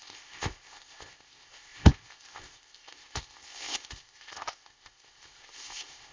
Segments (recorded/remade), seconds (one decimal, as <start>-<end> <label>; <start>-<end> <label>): 0.0-6.1 remade